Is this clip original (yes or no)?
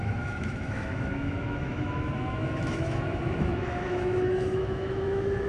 no